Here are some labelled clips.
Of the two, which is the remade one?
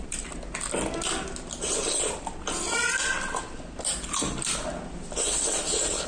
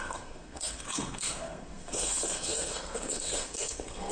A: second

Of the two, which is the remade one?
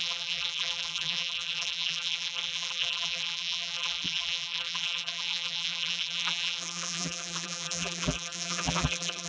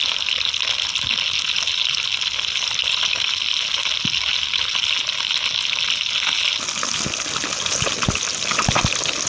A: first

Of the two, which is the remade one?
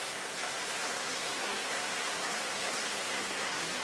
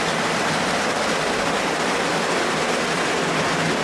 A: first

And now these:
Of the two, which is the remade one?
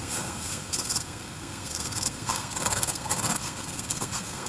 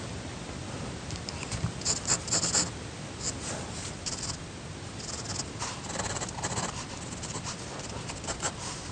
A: first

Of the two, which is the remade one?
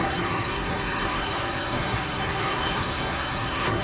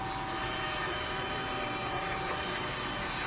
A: first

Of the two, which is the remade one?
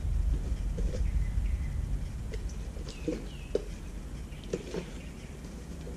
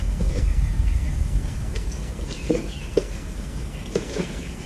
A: second